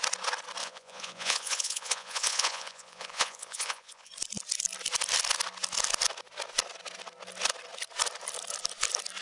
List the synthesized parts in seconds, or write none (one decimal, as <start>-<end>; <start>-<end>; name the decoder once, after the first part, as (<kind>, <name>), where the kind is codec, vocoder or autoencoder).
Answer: 0.6-4.1 (vocoder, Vocos)